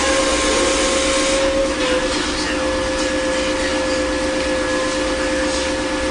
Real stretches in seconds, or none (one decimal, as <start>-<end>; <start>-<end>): 0.0-6.1